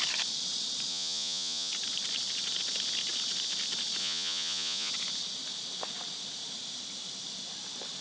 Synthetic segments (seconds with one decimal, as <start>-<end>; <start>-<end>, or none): 0.9-1.7; 4.0-4.9